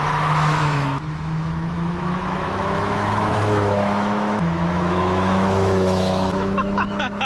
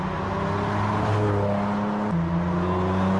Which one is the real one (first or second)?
second